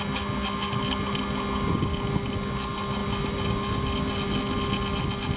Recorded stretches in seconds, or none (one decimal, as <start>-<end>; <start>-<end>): 0.0-5.4